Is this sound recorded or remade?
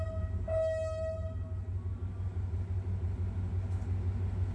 recorded